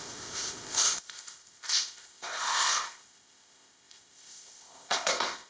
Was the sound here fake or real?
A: fake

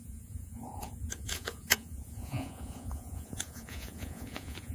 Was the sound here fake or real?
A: fake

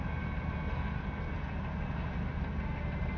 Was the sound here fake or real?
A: real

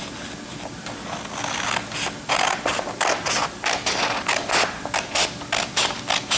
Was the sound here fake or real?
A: real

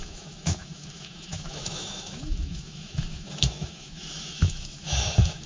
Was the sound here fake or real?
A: fake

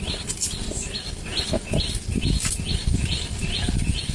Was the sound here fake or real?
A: real